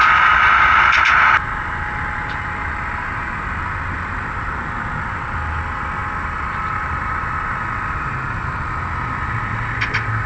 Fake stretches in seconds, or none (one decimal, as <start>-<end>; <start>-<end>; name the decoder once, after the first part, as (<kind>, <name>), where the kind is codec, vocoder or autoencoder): none